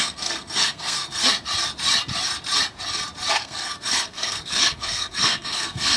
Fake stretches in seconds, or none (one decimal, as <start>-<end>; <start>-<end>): 0.0-1.2; 3.3-6.0